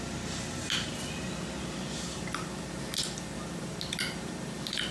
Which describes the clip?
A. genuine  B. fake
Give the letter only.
A